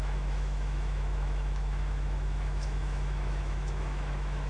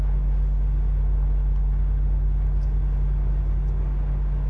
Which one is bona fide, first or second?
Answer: second